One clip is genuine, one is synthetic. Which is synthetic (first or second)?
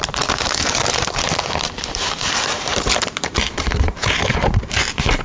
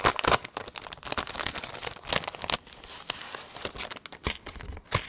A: first